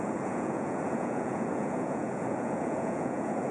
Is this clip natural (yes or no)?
no